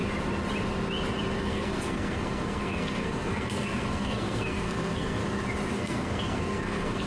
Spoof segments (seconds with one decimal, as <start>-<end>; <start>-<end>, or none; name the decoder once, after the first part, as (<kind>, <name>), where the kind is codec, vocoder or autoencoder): 1.4-5.2 (codec, SNAC); 5.7-7.1